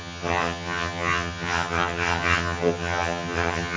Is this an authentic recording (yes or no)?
no